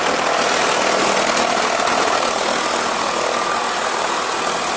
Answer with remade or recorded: recorded